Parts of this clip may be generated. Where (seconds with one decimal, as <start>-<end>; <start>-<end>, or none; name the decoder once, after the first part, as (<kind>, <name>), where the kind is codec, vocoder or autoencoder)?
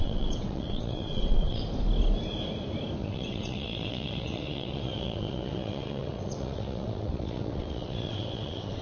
0.0-1.6 (vocoder, WaveNeXt); 3.0-8.8